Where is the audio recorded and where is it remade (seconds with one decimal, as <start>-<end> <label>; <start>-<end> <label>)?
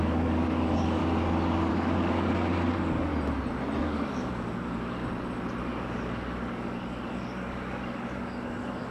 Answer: 0.0-1.0 remade; 1.0-1.7 recorded; 1.7-3.1 remade; 3.1-3.8 recorded; 3.8-5.0 remade; 5.0-5.6 recorded; 5.6-8.9 remade